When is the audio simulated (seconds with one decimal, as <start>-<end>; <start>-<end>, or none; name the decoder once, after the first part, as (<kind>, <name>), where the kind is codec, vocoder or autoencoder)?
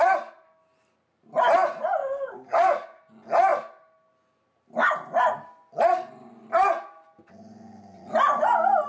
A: 2.0-3.0 (codec, DAC)